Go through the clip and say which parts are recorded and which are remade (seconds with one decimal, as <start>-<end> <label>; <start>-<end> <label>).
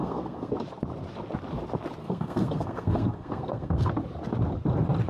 0.0-0.5 remade; 0.5-2.0 recorded; 2.0-3.9 remade; 3.9-5.1 recorded